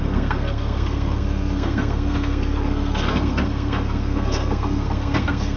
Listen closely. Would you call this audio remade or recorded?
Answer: remade